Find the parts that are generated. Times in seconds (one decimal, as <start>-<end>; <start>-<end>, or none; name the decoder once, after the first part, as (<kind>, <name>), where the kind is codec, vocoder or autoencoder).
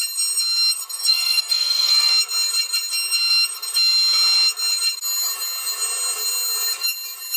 1.0-2.1 (codec, SNAC)